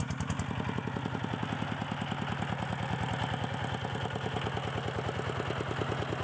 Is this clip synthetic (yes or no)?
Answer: no